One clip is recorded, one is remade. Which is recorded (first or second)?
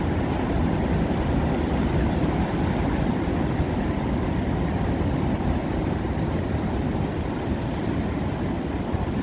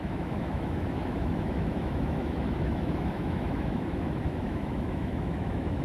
first